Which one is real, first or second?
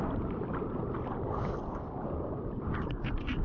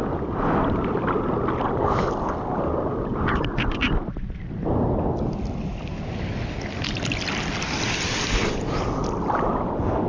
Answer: second